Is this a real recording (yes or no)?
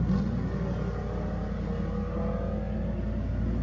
yes